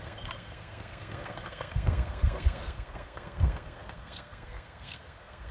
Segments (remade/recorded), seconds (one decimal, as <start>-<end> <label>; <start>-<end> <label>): 0.0-5.5 remade